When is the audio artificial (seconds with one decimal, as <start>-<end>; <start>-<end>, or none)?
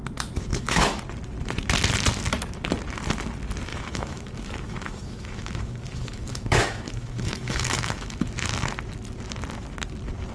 0.5-1.0; 3.7-8.3